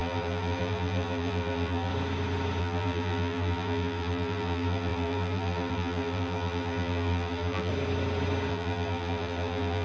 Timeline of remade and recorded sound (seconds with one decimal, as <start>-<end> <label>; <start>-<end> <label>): 0.0-1.9 remade; 1.9-2.6 recorded; 2.6-7.7 remade; 7.7-8.5 recorded; 8.5-9.8 remade